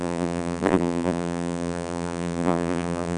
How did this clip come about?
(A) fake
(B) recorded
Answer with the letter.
A